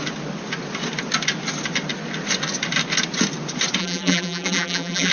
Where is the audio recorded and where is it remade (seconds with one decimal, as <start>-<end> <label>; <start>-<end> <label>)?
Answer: 0.0-3.8 recorded; 3.8-5.1 remade